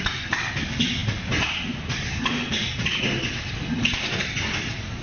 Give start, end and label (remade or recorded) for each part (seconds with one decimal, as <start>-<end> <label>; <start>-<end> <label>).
0.0-5.0 recorded